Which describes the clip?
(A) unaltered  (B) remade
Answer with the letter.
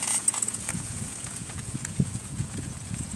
B